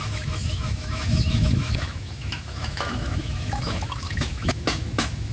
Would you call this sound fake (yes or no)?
yes